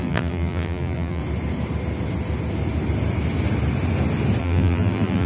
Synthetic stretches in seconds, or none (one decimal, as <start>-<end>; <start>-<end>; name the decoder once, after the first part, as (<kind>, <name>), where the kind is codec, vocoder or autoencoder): 0.0-1.2 (vocoder, BigVGAN v2); 4.4-5.3